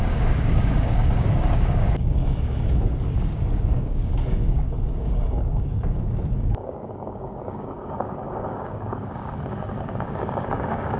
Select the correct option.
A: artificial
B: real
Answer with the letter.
A